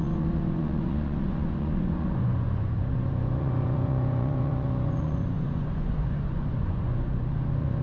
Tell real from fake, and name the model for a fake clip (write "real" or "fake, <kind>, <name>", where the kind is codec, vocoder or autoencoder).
fake, vocoder, Vocos